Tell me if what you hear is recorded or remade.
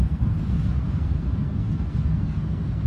remade